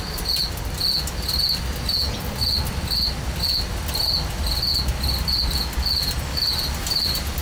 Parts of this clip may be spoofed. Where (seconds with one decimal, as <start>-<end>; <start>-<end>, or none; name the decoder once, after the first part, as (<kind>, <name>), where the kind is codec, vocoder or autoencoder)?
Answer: none